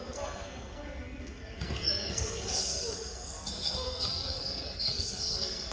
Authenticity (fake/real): fake